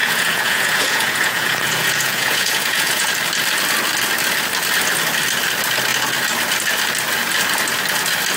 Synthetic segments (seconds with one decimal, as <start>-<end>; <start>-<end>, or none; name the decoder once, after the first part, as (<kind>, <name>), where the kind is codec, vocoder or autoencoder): 0.0-3.1 (vocoder, Vocos)